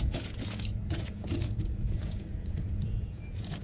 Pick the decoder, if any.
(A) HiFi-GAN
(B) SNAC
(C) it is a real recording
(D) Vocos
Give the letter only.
D